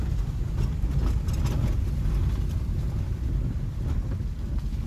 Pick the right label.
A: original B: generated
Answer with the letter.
A